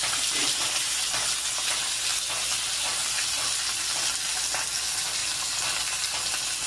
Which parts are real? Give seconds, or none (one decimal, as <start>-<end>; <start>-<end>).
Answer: 0.0-6.7